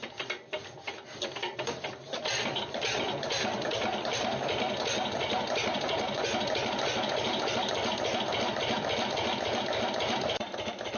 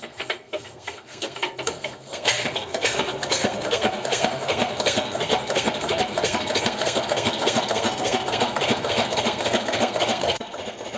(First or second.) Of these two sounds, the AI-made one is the second